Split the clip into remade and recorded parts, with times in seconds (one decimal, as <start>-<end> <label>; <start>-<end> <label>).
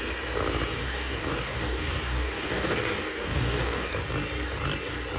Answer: 0.0-0.8 recorded; 0.8-3.9 remade; 3.9-5.2 recorded